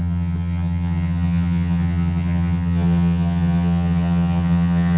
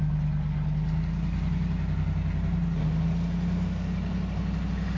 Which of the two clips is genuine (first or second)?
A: second